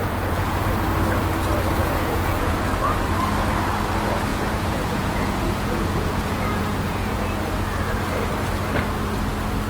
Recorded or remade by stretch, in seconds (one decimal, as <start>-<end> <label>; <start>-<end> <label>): 0.0-0.6 remade; 0.6-1.8 recorded; 1.8-2.7 remade; 2.7-4.3 recorded; 4.3-7.4 remade; 7.4-9.7 recorded